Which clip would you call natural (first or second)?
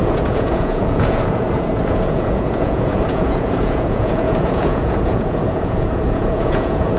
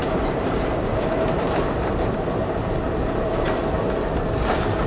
second